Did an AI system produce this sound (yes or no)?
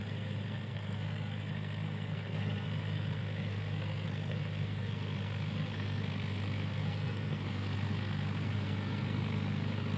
yes